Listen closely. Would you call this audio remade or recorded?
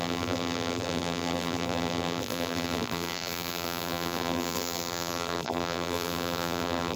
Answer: remade